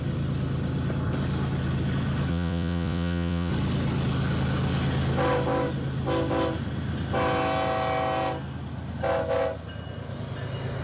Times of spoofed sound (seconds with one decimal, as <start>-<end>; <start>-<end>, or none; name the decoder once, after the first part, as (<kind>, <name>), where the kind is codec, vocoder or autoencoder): 2.3-3.5 (vocoder, Vocos)